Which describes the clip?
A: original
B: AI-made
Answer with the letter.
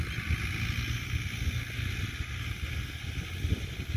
A